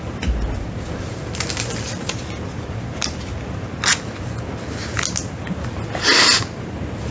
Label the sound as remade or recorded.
recorded